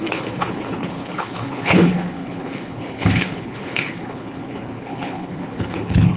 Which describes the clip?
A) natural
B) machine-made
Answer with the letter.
B